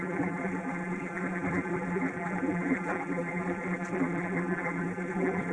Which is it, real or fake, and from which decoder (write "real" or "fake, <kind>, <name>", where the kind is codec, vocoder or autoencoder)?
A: fake, vocoder, BigVGAN v2